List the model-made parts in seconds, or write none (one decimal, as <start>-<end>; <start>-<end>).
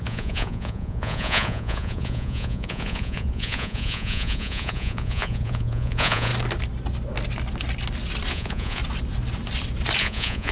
0.0-6.3; 8.3-8.8; 10.0-10.5